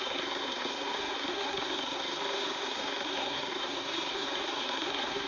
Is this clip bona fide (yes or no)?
no